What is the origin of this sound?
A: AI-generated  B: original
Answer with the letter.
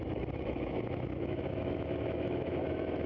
A